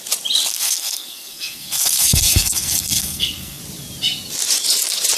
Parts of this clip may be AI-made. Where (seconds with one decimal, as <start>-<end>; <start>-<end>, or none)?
0.5-3.6

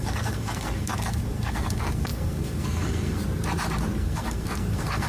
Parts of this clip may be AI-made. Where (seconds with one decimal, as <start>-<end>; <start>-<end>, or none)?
0.0-3.2; 3.9-5.1

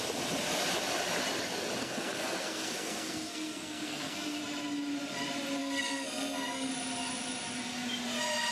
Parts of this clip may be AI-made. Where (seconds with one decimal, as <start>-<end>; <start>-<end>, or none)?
1.8-4.4; 5.6-6.7

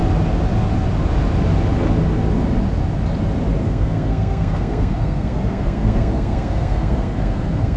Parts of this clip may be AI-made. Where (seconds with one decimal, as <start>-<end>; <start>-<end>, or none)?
3.6-7.8

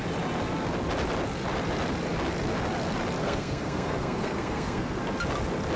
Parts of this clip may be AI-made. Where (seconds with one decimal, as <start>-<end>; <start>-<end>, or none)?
3.2-5.0

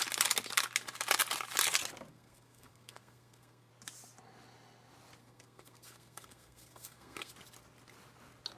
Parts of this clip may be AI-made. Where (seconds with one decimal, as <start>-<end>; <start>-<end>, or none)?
2.1-3.7; 5.2-7.3

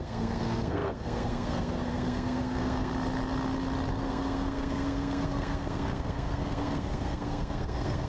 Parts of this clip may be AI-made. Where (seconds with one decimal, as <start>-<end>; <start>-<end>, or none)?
0.0-2.9; 3.9-8.1